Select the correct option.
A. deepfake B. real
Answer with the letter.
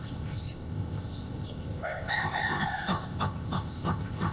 A